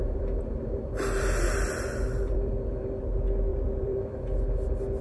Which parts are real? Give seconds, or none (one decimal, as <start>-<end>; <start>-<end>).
3.0-3.5; 4.2-5.0